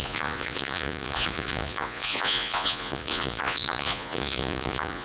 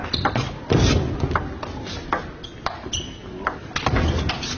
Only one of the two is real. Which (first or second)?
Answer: second